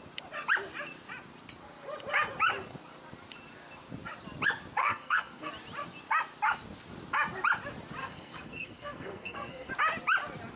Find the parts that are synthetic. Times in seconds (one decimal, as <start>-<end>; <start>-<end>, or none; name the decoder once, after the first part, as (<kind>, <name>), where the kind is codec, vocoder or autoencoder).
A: 4.8-5.5 (codec, SNAC); 8.0-9.7